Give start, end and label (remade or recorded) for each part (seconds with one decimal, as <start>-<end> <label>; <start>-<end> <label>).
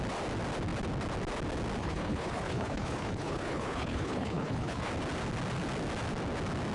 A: 0.0-1.8 recorded; 1.8-4.9 remade; 4.9-6.7 recorded